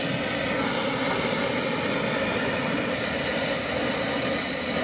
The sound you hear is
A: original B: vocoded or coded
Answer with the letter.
A